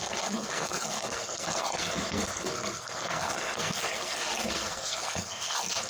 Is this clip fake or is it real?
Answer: fake